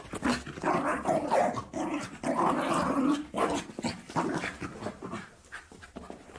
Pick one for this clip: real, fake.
real